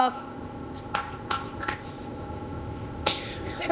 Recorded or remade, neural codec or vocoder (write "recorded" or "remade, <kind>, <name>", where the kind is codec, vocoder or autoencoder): remade, codec, ZipCodec